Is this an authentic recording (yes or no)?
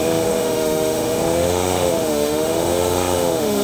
no